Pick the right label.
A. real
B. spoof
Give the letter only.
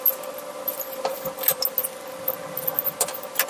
A